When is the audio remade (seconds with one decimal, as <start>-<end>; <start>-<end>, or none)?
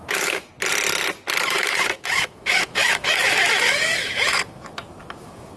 0.0-0.5; 1.4-5.6